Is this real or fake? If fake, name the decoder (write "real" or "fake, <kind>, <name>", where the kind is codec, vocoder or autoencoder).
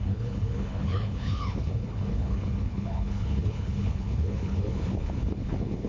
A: fake, codec, HILCodec